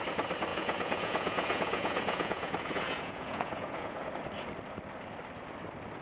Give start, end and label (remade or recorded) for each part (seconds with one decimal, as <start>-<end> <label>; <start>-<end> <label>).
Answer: 0.0-0.5 recorded; 0.5-4.1 remade; 4.1-6.0 recorded